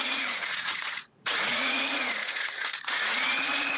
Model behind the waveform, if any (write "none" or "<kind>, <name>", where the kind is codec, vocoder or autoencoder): vocoder, Vocos